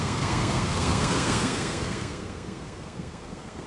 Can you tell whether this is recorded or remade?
remade